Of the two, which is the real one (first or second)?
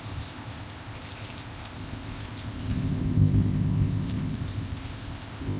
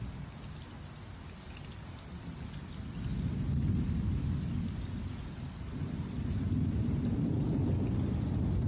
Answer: second